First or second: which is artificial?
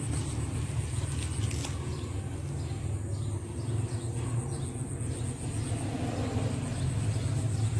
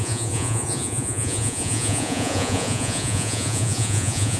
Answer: second